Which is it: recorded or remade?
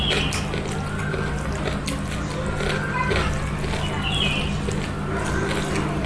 recorded